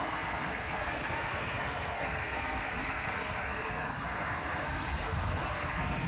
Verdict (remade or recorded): remade